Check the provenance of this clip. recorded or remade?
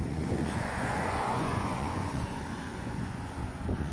remade